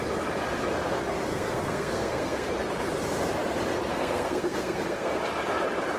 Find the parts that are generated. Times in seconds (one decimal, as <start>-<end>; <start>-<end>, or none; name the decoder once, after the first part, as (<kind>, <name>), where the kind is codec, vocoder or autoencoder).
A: 1.3-2.5 (codec, SNAC); 3.9-5.2